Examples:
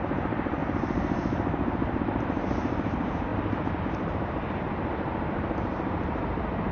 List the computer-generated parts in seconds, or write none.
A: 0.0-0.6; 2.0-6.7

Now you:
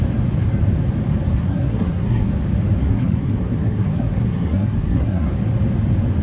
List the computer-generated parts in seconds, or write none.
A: 1.3-2.3; 2.8-5.3

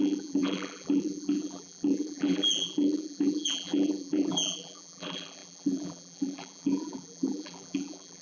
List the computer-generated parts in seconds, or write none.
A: 0.0-8.2

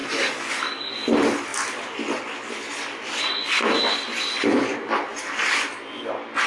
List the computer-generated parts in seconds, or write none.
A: 0.0-0.9

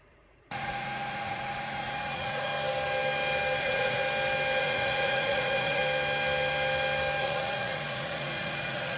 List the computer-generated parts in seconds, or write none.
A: 0.0-2.5; 3.6-4.0; 4.6-5.8; 7.2-9.0

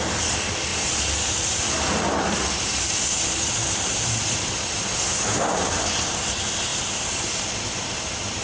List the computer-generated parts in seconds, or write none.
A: 0.7-1.2; 3.6-4.8